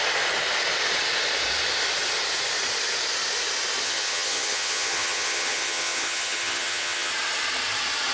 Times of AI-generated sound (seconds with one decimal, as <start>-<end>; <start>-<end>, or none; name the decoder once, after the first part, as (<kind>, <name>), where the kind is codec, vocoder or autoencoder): 3.8-7.1 (vocoder, HiFi-GAN)